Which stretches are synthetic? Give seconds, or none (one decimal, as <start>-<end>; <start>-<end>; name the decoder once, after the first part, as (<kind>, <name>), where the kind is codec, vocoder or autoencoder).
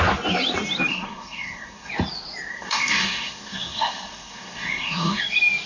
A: 0.9-1.9 (codec, SNAC); 2.5-5.2